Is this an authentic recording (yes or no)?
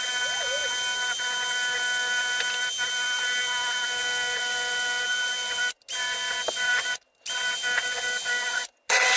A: yes